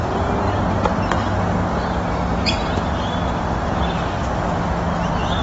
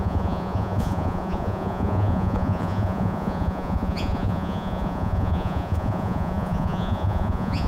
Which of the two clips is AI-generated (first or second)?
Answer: second